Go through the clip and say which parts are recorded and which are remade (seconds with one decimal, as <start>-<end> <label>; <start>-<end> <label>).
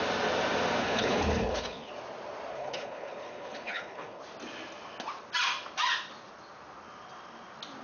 0.0-0.8 recorded; 0.8-1.9 remade; 1.9-2.5 recorded; 2.5-4.2 remade; 4.2-7.8 recorded